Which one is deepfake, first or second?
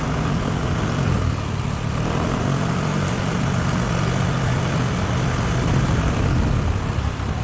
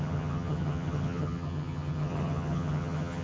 second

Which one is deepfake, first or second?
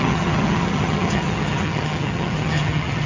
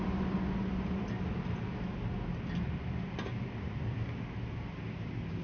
first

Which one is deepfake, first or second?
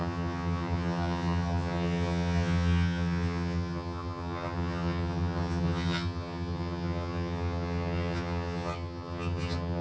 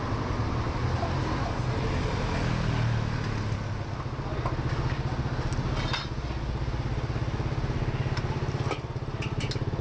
first